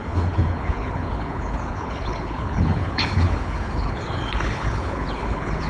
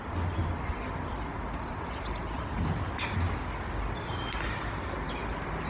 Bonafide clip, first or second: second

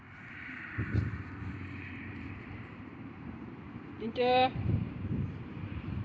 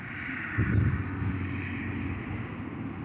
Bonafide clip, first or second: second